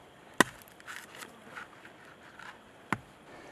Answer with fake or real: real